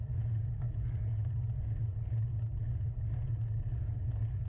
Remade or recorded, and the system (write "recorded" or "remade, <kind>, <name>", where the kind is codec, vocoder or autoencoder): recorded